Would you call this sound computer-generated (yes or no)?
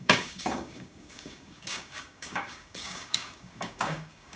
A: yes